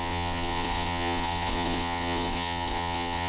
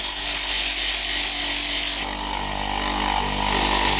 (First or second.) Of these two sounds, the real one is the second